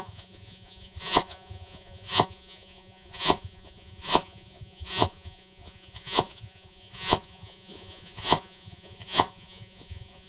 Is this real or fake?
fake